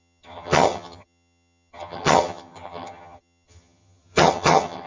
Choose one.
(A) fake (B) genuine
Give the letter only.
A